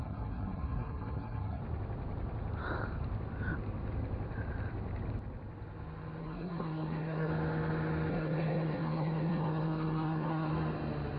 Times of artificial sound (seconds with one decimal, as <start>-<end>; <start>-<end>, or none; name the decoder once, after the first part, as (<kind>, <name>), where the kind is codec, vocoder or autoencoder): 0.0-1.6 (codec, SNAC); 6.2-7.3; 8.1-10.5